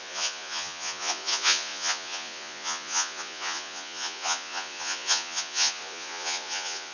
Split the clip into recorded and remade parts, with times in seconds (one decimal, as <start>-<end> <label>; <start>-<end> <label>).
0.0-6.9 remade